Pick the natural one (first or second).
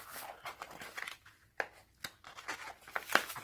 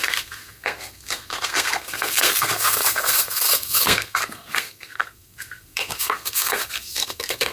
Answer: first